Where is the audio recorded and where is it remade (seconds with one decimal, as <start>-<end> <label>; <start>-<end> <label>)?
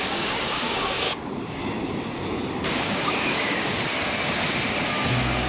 0.0-1.2 remade; 1.2-2.8 recorded; 2.8-3.7 remade; 3.7-5.1 recorded; 5.1-5.5 remade